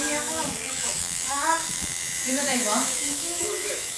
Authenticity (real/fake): fake